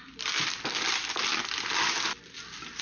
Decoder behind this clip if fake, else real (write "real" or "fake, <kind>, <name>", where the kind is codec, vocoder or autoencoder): real